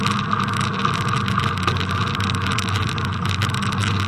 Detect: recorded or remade recorded